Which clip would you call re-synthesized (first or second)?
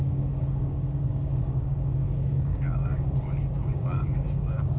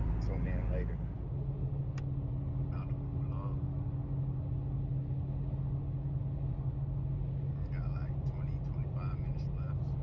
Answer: first